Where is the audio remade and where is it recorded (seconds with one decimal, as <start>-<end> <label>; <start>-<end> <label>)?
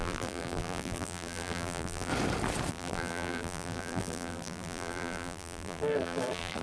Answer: 0.0-2.1 remade; 2.1-2.7 recorded; 2.7-6.6 remade